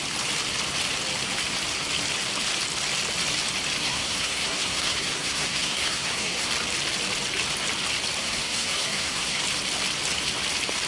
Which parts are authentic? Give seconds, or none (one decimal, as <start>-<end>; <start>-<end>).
0.0-3.8; 6.5-8.2; 9.4-10.9